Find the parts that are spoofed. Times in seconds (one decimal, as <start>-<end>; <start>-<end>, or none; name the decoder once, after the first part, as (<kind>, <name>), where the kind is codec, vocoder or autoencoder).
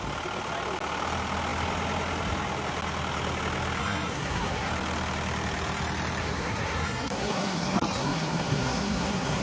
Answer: 3.8-4.7 (codec, SNAC); 6.2-9.4